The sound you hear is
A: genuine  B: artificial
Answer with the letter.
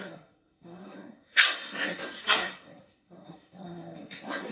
B